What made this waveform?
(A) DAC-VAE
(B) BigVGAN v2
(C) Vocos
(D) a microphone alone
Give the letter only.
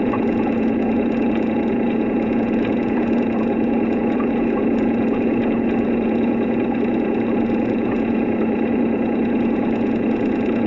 C